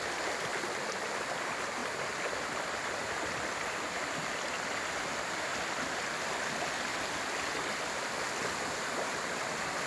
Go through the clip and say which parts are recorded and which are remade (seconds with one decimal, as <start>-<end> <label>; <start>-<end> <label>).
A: 0.0-9.9 recorded